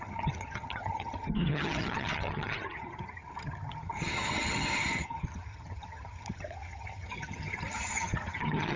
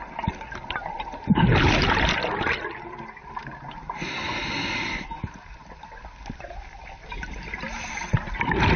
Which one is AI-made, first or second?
first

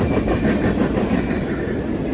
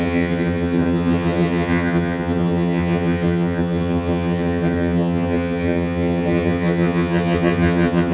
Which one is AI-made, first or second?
second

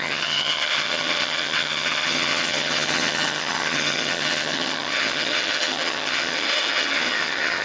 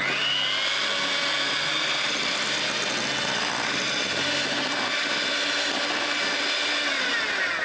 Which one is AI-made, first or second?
first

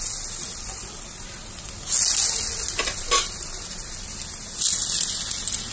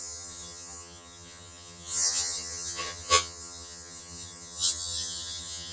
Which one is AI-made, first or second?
second